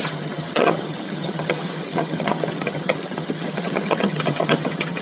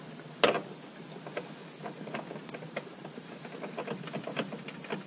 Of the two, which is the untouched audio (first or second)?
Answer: second